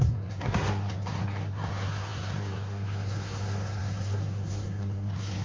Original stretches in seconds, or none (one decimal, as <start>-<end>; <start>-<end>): none